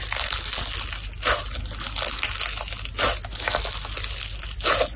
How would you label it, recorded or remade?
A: recorded